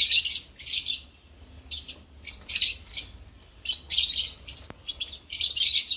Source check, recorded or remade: recorded